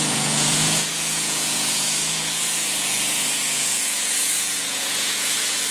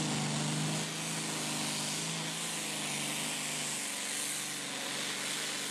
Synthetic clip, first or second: first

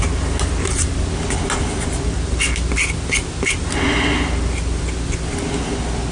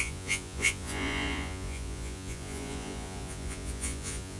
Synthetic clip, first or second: second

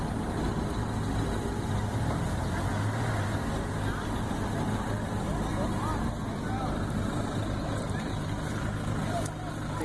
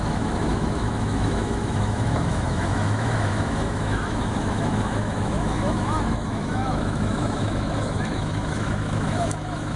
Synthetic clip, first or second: second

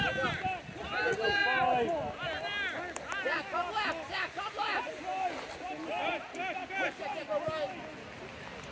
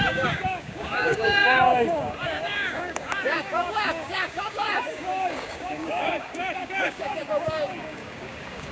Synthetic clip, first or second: second